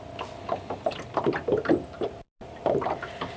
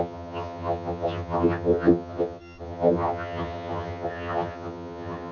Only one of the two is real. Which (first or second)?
first